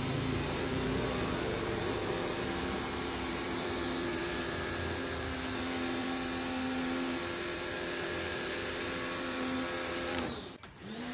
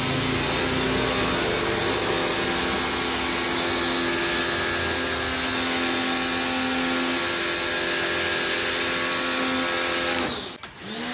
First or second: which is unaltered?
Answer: second